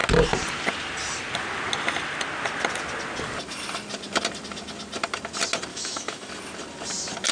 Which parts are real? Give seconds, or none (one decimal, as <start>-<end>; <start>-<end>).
0.0-5.7; 6.3-7.3